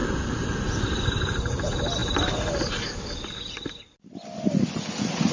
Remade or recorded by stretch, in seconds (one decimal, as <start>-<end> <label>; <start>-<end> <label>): 0.0-5.3 recorded